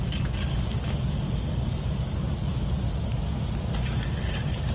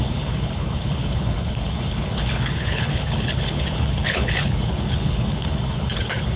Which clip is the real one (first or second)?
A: first